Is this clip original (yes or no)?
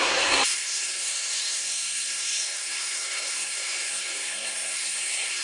no